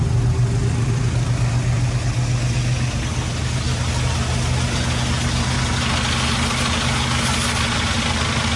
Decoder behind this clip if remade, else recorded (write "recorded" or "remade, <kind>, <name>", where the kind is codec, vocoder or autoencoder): recorded